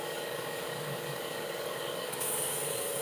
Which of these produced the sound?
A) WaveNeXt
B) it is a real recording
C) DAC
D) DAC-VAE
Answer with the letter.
C